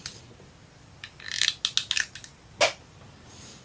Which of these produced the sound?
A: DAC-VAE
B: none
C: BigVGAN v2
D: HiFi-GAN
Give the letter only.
B